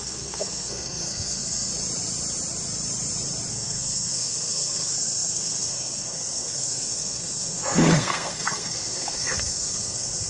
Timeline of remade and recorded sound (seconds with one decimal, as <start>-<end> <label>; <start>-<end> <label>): 0.0-1.7 remade; 1.7-3.5 recorded; 3.5-10.3 remade